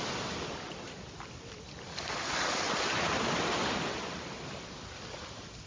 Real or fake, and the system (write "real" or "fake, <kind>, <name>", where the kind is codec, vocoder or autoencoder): real